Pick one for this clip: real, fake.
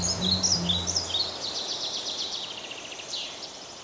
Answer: real